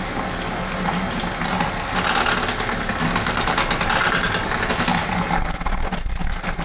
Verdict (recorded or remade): recorded